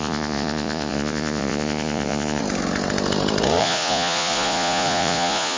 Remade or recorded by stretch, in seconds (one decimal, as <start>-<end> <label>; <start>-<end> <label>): 0.0-2.4 remade; 2.4-3.6 recorded; 3.6-5.6 remade